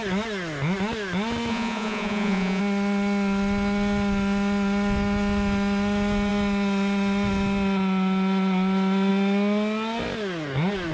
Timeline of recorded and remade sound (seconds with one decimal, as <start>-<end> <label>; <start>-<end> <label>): 0.0-1.5 recorded; 1.5-2.6 remade; 2.6-10.9 recorded